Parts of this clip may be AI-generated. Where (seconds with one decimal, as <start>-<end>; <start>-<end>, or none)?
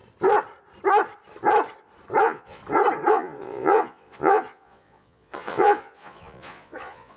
2.2-2.6; 3.1-7.2